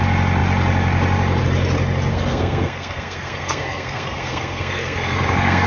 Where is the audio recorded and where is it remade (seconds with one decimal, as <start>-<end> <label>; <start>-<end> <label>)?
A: 0.0-2.1 recorded; 2.1-5.7 remade